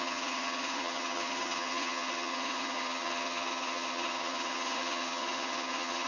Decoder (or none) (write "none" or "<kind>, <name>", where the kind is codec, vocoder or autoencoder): vocoder, HiFi-GAN